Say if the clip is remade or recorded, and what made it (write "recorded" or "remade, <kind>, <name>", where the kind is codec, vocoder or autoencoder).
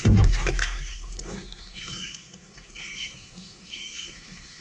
remade, codec, SNAC